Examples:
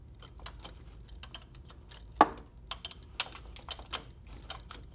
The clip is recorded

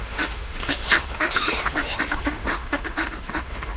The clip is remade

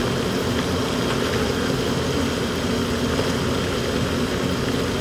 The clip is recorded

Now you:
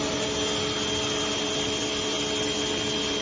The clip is recorded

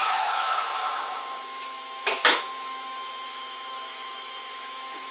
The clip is remade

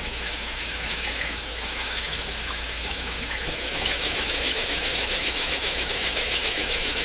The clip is remade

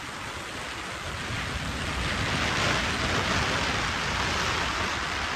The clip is recorded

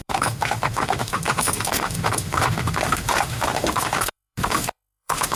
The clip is remade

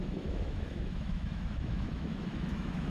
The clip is remade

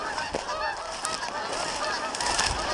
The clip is recorded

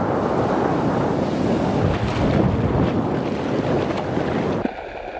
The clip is recorded